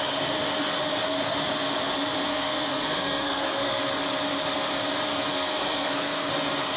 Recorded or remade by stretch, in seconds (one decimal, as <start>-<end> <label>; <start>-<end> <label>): 0.0-2.3 recorded; 2.3-3.8 remade; 3.8-5.3 recorded; 5.3-6.3 remade; 6.3-6.8 recorded